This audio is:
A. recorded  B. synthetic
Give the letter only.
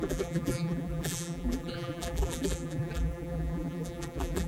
B